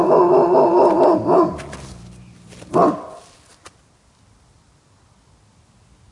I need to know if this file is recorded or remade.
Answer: recorded